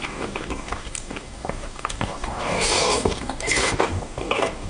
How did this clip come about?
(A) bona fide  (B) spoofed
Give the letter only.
B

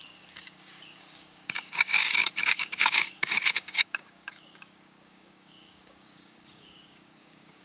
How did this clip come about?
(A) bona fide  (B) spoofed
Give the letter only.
B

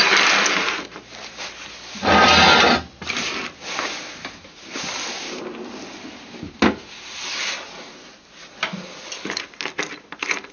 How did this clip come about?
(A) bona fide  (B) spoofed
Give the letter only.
A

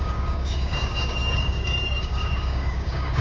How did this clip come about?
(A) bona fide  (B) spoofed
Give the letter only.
B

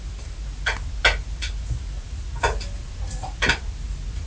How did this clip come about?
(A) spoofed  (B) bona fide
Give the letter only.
B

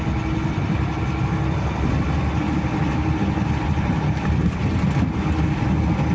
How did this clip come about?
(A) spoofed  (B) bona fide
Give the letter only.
B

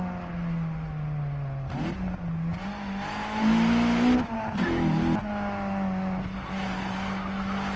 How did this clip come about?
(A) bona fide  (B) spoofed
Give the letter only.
A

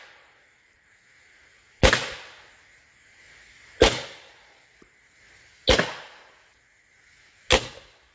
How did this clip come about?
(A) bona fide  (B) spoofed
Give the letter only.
A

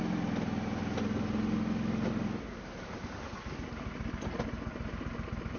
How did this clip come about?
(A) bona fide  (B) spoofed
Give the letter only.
A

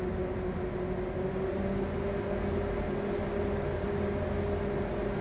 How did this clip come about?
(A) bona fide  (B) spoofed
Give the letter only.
A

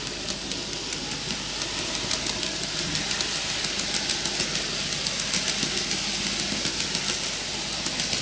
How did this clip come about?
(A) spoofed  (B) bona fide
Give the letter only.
B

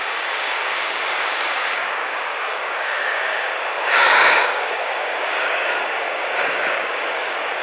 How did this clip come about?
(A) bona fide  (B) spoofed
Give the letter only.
B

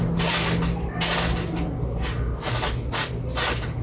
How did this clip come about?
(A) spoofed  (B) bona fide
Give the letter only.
B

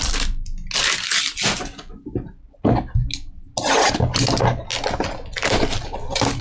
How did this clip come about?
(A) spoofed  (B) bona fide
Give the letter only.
B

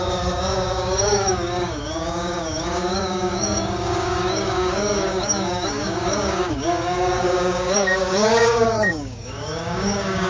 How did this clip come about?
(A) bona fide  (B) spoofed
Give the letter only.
B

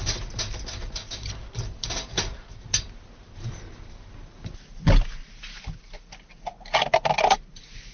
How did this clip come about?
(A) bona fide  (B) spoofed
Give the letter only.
A